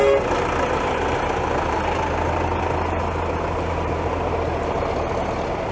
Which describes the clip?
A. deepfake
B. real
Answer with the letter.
B